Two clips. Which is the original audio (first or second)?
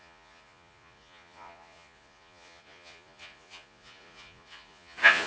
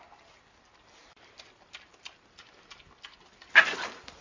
second